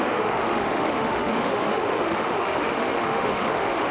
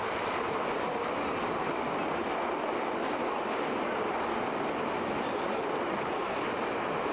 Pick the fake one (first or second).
first